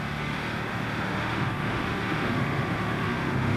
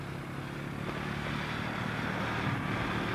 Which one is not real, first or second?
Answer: first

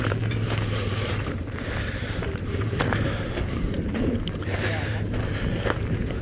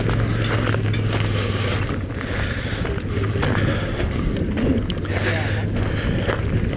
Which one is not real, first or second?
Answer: first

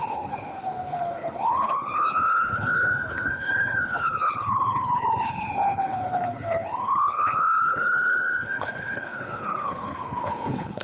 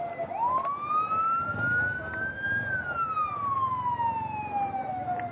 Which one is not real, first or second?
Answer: first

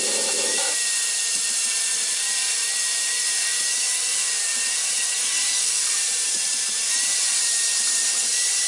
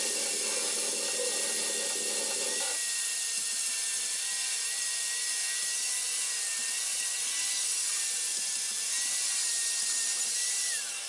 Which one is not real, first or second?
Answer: first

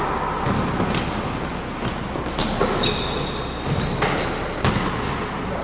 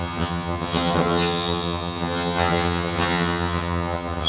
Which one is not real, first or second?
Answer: second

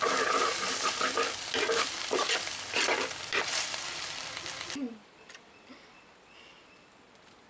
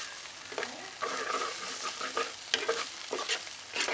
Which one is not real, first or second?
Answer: first